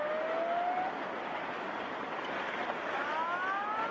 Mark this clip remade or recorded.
recorded